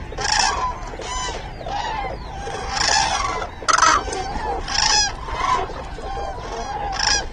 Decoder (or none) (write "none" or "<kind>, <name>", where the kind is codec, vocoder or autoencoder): none